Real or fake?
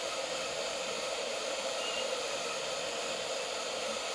fake